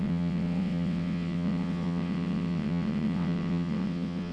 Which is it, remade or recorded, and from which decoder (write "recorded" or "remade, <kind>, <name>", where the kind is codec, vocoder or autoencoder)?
remade, vocoder, WaveNeXt